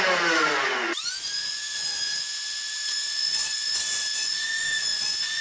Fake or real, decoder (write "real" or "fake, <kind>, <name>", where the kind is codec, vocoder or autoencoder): fake, vocoder, Vocos